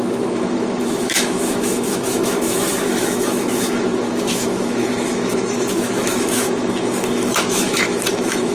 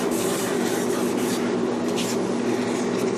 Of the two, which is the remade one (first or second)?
first